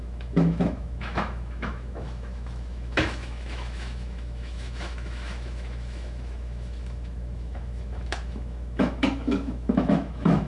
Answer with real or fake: fake